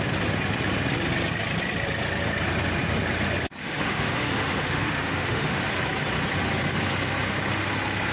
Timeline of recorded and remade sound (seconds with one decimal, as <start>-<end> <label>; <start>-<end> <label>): 0.0-3.6 recorded; 3.6-5.6 remade; 5.6-8.1 recorded